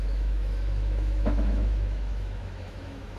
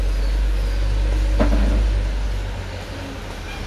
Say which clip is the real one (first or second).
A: second